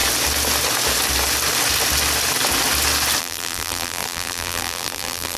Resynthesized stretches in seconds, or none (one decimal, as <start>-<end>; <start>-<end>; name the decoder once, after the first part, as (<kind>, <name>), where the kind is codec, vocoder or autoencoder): 3.2-5.4 (vocoder, BigVGAN v2)